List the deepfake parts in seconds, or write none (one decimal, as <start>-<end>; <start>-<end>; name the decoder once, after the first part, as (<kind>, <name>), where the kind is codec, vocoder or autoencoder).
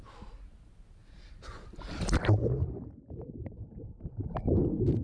none